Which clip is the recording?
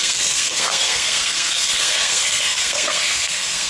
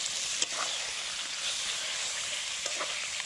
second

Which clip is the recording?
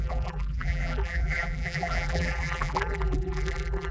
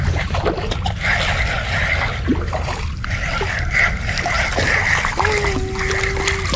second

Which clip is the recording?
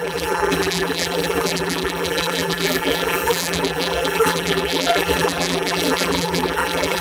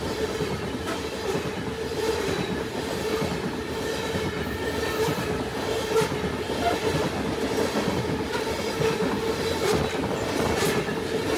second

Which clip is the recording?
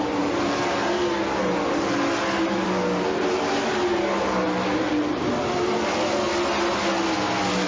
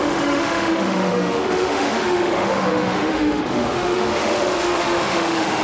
first